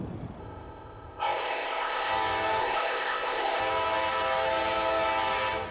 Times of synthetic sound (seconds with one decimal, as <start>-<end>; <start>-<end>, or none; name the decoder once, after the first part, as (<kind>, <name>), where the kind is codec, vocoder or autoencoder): 0.4-2.1 (codec, ZipCodec); 2.6-3.6